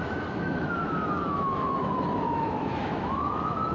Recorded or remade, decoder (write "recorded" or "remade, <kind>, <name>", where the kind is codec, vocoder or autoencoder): remade, autoencoder, DAC-VAE